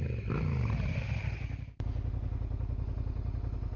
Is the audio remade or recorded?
recorded